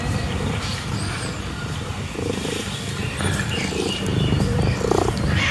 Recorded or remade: recorded